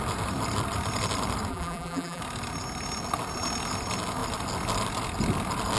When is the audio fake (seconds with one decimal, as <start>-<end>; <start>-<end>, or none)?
1.5-2.2